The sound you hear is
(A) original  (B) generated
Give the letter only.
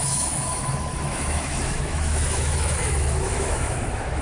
B